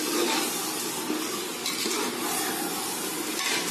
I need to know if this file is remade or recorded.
recorded